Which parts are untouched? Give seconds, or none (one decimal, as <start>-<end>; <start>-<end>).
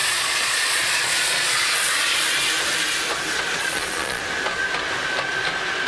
1.7-3.6; 4.2-5.9